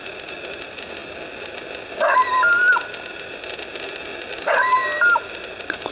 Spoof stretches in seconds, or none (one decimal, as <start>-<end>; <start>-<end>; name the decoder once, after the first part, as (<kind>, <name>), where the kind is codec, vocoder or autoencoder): none